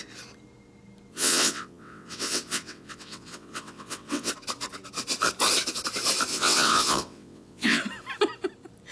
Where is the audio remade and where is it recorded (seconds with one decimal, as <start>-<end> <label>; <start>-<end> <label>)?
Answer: 0.0-1.1 recorded; 1.1-4.3 remade; 4.3-6.3 recorded; 6.3-7.8 remade; 7.8-8.9 recorded